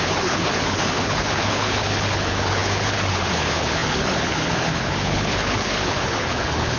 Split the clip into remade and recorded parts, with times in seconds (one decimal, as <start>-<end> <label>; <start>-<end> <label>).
0.0-6.8 remade